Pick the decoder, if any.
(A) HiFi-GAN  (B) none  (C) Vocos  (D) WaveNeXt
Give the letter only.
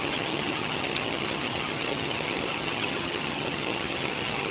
A